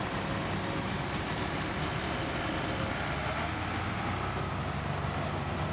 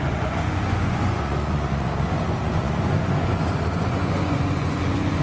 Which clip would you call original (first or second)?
first